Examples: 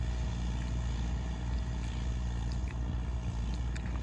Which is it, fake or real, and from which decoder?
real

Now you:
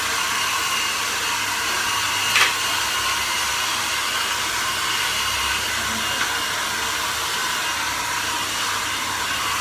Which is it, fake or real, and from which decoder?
real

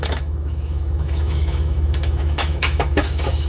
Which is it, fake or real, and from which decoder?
fake, autoencoder, DAC-VAE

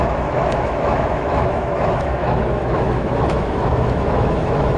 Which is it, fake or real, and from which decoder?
fake, autoencoder, DAC-VAE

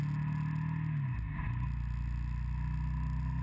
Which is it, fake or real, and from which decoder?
real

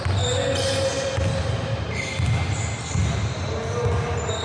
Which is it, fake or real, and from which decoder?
real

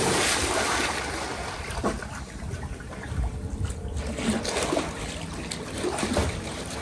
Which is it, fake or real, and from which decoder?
real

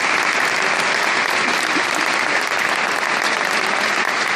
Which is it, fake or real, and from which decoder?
real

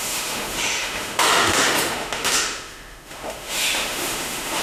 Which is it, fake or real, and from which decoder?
fake, autoencoder, DAC-VAE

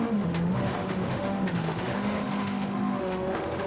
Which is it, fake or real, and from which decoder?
fake, autoencoder, DAC-VAE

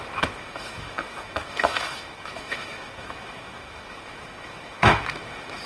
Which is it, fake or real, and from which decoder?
fake, autoencoder, DAC-VAE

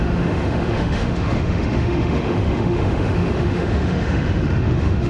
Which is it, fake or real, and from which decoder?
fake, autoencoder, DAC-VAE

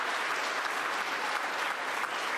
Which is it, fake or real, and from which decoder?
real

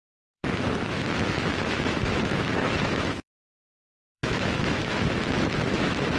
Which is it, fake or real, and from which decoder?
fake, autoencoder, DAC-VAE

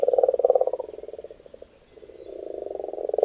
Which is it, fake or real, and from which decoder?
real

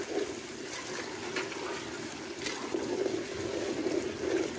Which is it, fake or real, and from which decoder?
real